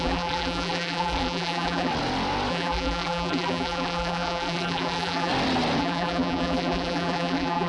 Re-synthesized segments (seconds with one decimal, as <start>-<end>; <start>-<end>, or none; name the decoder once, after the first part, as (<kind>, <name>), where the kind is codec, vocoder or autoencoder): 0.0-1.9 (vocoder, BigVGAN v2); 2.5-5.3; 5.8-7.7